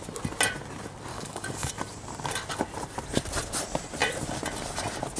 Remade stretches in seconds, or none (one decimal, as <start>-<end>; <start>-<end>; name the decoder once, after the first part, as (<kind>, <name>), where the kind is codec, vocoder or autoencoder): 1.1-1.7 (codec, DAC)